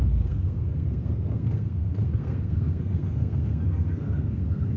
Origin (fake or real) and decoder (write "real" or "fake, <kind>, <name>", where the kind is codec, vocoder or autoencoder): fake, codec, SNAC